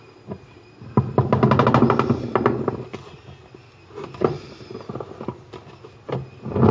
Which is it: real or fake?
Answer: real